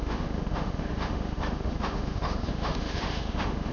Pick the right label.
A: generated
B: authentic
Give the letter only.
A